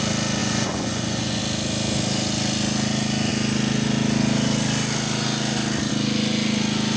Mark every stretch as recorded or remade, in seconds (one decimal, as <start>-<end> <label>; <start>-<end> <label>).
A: 0.0-0.4 recorded; 0.4-1.4 remade; 1.4-7.0 recorded